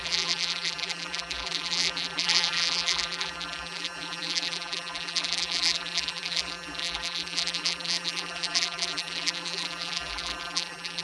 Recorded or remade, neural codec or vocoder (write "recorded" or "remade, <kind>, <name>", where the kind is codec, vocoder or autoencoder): remade, vocoder, BigVGAN v2